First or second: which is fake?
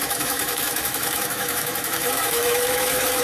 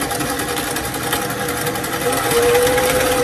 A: first